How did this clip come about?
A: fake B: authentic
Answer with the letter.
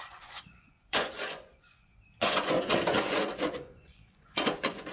A